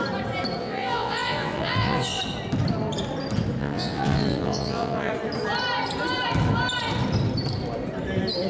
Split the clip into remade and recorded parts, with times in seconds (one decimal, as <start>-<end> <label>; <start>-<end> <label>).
0.0-0.6 recorded; 0.6-2.2 remade; 2.2-3.6 recorded; 3.6-5.1 remade; 5.1-8.5 recorded